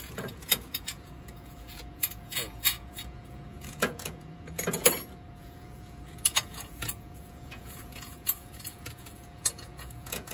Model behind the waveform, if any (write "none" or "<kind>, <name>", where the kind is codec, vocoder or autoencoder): vocoder, Vocos